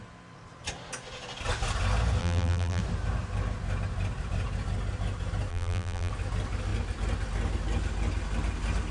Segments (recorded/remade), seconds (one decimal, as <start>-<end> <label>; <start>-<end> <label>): 0.0-2.2 recorded; 2.2-2.8 remade; 2.8-5.5 recorded; 5.5-6.1 remade; 6.1-8.9 recorded